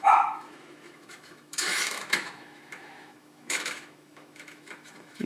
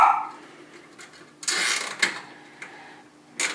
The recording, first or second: second